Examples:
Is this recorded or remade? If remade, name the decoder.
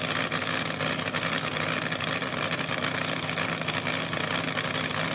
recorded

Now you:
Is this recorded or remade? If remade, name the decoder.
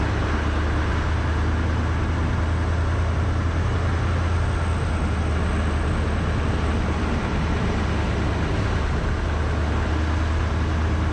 recorded